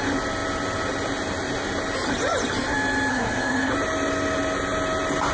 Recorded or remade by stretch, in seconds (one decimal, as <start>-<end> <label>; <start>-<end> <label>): 0.0-3.1 recorded; 3.1-3.7 remade; 3.7-5.3 recorded